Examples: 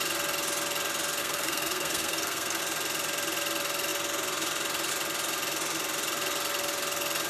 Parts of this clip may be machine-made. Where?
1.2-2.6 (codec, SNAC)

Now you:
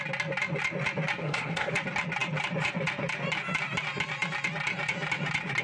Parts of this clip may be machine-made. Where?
1.2-1.7 (codec, SNAC)

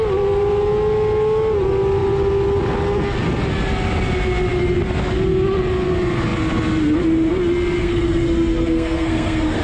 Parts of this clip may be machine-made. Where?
7.8-9.6 (codec, SNAC)